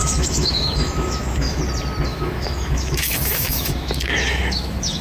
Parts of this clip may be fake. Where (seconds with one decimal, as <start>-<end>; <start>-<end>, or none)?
0.0-1.6; 2.1-5.0